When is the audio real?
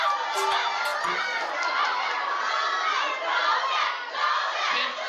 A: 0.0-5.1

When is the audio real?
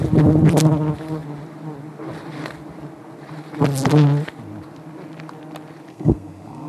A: 0.0-5.9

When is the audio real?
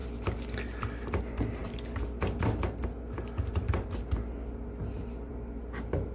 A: 0.0-6.1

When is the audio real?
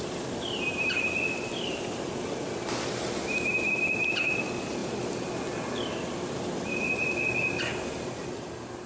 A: 0.0-8.9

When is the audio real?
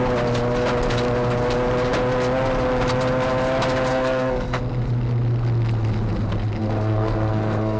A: 0.0-3.9; 4.6-6.6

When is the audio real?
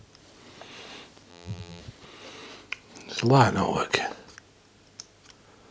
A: 0.0-1.3; 1.8-5.7